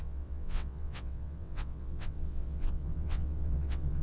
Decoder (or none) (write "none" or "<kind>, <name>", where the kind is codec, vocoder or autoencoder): vocoder, WaveNeXt